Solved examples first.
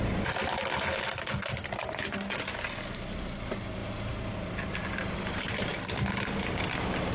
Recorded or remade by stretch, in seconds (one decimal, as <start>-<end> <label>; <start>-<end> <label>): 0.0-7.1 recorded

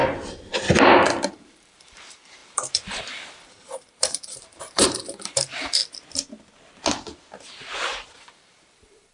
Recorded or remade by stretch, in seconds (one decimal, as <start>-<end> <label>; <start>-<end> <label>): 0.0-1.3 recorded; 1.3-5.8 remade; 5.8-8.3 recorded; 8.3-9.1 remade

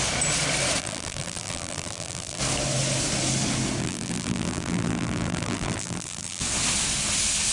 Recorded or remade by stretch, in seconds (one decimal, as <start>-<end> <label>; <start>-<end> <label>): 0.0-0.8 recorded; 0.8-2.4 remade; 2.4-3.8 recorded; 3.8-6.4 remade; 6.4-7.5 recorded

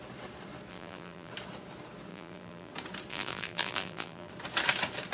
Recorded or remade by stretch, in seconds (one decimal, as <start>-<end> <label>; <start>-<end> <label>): 0.0-0.7 recorded; 0.7-1.3 remade; 1.3-2.1 recorded; 2.1-2.7 remade; 2.7-3.1 recorded; 3.1-4.3 remade; 4.3-5.1 recorded

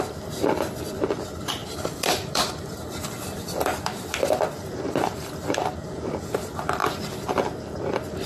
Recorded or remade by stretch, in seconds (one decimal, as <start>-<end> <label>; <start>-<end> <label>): 0.0-1.6 recorded; 1.6-6.1 remade; 6.1-6.8 recorded; 6.8-8.3 remade

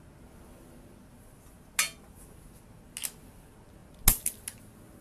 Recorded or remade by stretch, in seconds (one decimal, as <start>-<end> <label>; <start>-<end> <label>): 0.0-5.0 recorded

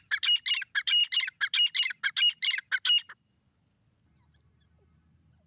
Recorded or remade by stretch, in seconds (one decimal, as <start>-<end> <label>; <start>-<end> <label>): 0.0-5.5 recorded